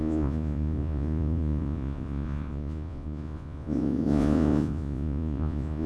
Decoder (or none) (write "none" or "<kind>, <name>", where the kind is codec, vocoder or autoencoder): vocoder, Vocos